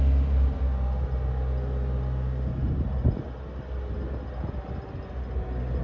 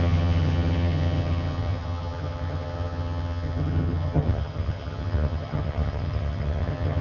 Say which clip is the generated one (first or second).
second